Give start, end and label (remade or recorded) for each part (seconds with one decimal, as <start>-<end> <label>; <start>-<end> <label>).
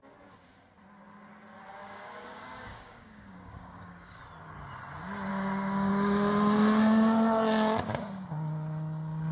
0.0-1.8 recorded; 1.8-4.2 remade; 4.2-5.3 recorded; 5.3-5.9 remade; 5.9-9.3 recorded